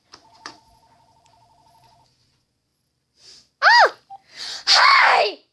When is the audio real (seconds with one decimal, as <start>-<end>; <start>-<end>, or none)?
2.7-4.4